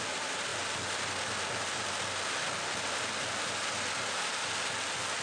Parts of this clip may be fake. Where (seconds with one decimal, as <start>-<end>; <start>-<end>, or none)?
none